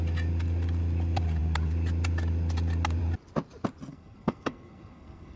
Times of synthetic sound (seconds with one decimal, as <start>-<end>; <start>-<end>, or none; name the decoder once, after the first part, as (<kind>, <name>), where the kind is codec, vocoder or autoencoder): 3.9-5.4 (codec, SNAC)

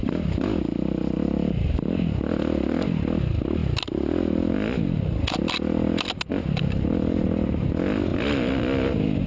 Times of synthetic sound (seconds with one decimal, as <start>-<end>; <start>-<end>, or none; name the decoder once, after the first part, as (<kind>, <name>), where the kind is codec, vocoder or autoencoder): none

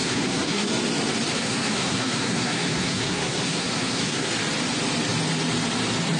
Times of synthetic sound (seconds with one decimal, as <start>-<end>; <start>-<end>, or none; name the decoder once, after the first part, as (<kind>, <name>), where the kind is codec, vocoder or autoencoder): 0.0-0.7 (codec, SNAC); 1.3-4.3

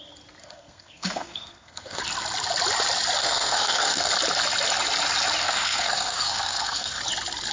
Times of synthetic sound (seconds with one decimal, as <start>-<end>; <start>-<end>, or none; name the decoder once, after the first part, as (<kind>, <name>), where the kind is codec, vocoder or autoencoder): 0.4-2.0 (codec, SNAC); 3.2-4.1; 5.4-7.0

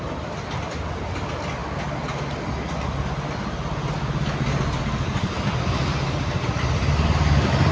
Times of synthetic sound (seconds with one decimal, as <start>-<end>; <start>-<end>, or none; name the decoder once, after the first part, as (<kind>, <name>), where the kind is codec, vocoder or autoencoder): none

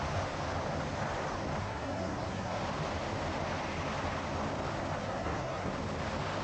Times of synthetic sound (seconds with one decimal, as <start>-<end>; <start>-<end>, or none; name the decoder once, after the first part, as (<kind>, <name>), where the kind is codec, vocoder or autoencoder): 1.6-2.6 (codec, SNAC); 5.0-5.7

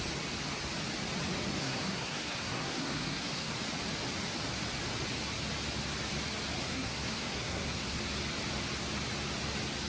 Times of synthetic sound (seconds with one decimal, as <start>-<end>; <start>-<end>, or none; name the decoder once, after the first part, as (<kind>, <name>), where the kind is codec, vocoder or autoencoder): 1.6-3.5 (codec, SNAC); 6.6-8.0

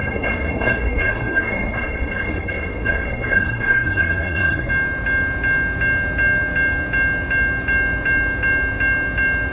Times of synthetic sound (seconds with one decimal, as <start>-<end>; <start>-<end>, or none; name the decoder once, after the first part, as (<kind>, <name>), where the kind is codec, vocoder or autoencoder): 0.0-4.7 (codec, SNAC)